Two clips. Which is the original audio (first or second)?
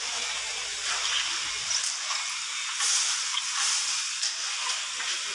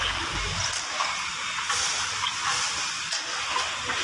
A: first